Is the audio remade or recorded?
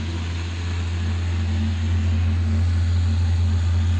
recorded